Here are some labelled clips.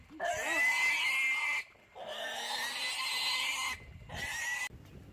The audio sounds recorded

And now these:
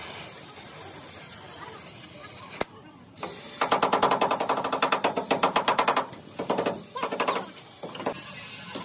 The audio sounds recorded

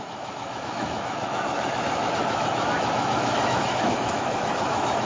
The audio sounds remade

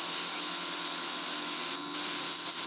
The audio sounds recorded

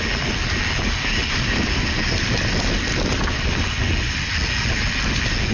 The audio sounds recorded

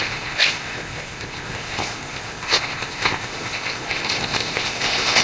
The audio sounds remade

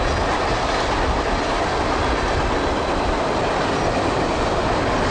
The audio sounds recorded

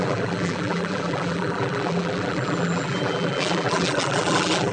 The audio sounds remade